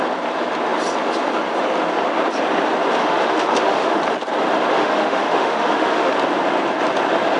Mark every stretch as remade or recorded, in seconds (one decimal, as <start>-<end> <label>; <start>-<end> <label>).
0.0-3.0 recorded; 3.0-4.0 remade; 4.0-4.7 recorded; 4.7-6.1 remade; 6.1-7.4 recorded